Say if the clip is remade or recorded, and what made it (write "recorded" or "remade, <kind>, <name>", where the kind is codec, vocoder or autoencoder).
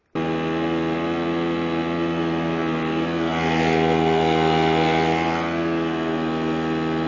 recorded